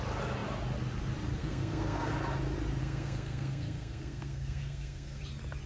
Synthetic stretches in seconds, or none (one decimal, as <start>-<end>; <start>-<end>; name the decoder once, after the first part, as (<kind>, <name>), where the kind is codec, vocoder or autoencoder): 1.4-2.1 (codec, SNAC); 2.8-5.2